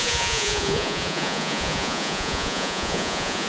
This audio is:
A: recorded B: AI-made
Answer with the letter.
B